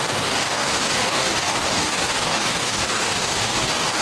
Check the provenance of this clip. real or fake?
fake